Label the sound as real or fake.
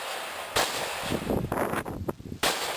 real